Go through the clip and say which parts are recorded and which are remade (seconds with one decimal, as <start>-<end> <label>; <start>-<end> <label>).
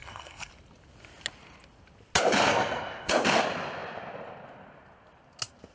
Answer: 0.0-0.5 remade; 0.5-2.5 recorded; 2.5-3.1 remade; 3.1-5.7 recorded